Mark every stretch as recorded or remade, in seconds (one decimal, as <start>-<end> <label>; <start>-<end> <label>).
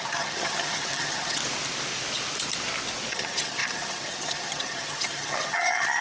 0.0-1.4 remade; 1.4-3.1 recorded; 3.1-6.0 remade